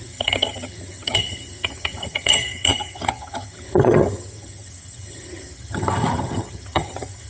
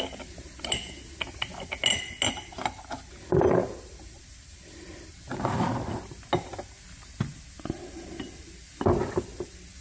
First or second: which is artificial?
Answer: first